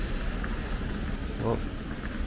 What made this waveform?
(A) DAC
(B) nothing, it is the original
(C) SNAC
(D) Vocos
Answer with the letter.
B